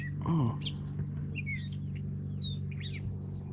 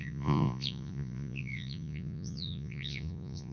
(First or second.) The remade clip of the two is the second